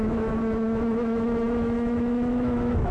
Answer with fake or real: fake